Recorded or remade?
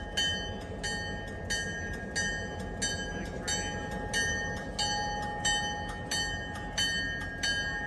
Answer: recorded